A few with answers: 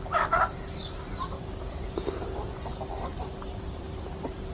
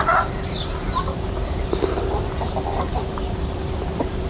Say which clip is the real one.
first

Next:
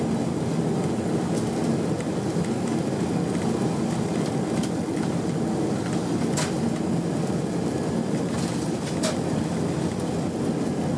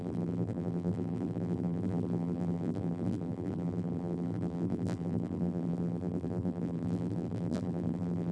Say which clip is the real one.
first